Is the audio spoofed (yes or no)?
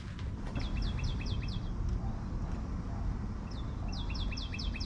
no